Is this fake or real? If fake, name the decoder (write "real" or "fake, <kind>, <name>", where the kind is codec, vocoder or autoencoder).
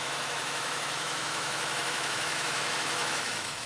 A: fake, autoencoder, DAC-VAE